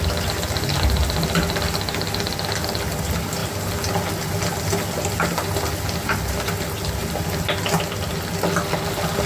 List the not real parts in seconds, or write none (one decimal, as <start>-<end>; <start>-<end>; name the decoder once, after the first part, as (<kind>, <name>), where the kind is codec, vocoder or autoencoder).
none